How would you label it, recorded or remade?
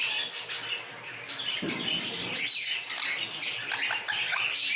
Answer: recorded